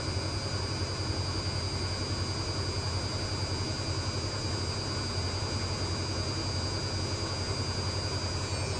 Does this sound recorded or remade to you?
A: recorded